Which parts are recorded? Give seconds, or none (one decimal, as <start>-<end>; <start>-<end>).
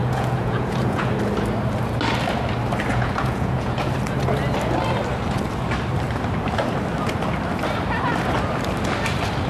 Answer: 1.1-2.9; 3.9-9.5